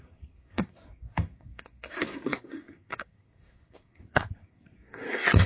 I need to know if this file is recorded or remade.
remade